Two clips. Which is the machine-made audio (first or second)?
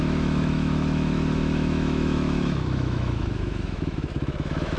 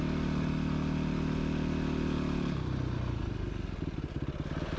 first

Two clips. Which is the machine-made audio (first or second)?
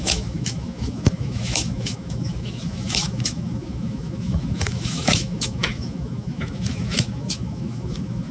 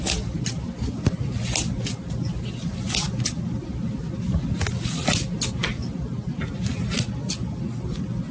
first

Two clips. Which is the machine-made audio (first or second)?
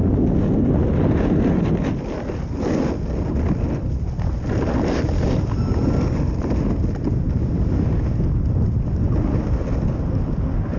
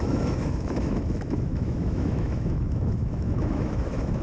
second